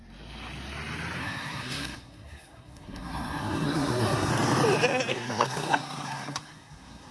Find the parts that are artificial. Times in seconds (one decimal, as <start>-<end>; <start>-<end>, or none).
1.2-4.3; 5.1-7.1

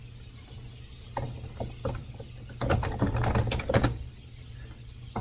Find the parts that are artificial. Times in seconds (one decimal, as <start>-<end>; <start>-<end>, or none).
none

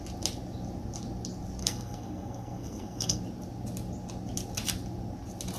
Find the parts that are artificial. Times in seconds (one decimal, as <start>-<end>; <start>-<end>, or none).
1.6-3.2

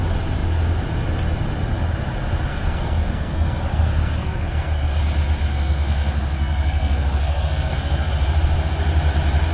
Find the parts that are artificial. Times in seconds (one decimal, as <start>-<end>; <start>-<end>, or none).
2.5-5.0; 5.4-8.1